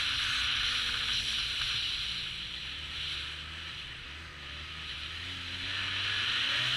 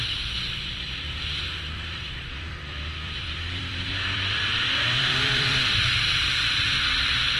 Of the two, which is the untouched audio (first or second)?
first